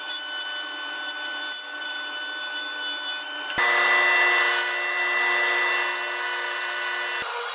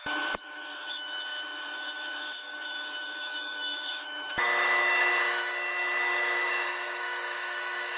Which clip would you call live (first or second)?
first